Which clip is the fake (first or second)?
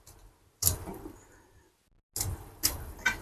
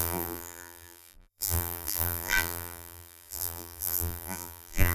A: second